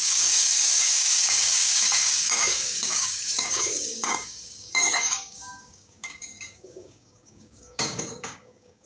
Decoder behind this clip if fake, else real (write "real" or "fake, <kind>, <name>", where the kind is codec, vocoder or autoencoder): fake, codec, DAC